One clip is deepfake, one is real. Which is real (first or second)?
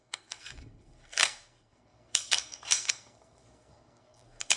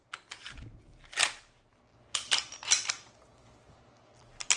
second